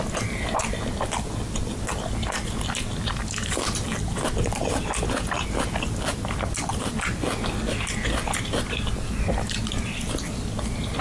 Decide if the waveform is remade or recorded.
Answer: recorded